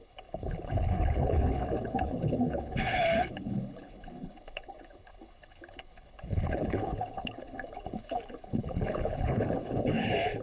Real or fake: fake